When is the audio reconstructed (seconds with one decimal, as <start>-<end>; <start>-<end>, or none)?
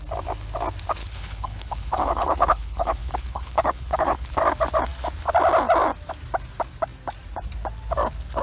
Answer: 1.0-4.4